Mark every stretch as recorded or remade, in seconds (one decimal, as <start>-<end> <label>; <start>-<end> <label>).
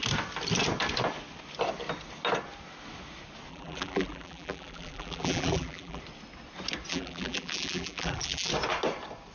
0.0-3.5 recorded; 3.5-6.0 remade; 6.0-6.9 recorded; 6.9-8.5 remade; 8.5-9.3 recorded